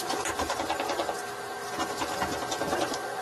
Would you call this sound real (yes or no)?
yes